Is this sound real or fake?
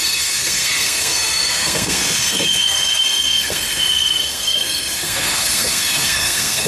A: fake